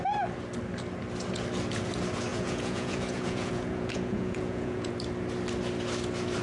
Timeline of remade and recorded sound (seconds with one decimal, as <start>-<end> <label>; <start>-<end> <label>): 0.0-2.3 recorded; 2.3-4.9 remade; 4.9-6.4 recorded